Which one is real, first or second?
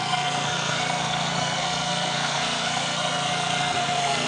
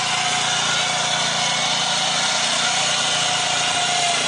second